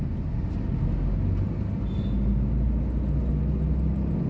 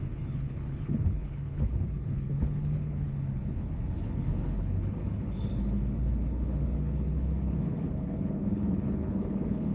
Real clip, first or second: first